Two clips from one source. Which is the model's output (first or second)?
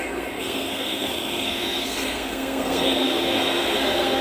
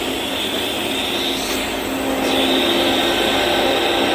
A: first